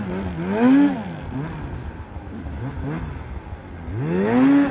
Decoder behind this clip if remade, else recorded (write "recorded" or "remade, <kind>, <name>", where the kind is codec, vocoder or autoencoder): recorded